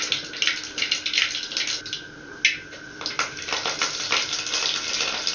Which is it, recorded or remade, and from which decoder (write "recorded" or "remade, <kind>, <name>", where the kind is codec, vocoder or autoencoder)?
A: recorded